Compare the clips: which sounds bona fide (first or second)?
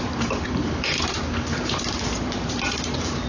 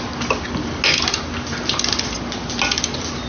second